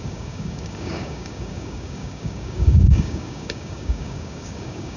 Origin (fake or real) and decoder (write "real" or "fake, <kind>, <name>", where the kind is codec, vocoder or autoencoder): fake, codec, DAC